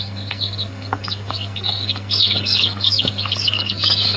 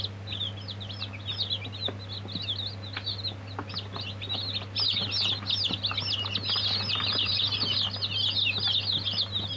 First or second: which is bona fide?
second